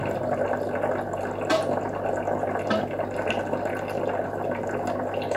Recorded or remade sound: recorded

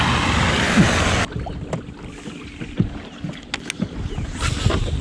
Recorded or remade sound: recorded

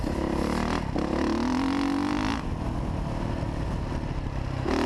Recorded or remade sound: recorded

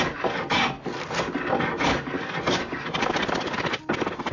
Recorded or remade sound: recorded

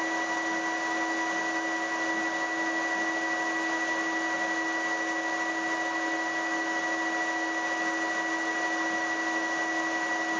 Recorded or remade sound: recorded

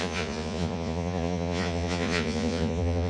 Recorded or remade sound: remade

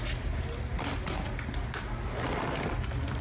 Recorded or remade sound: recorded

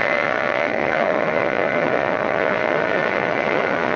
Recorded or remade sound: remade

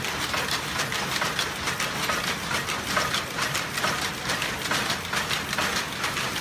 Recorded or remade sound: recorded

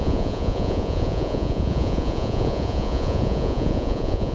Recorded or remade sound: remade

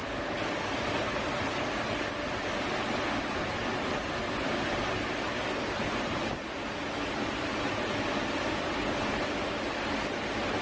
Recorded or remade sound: recorded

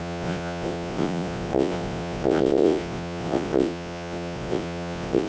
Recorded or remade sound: remade